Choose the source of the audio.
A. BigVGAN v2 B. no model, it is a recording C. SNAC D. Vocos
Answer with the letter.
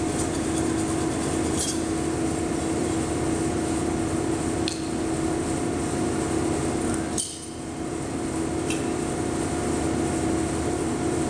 B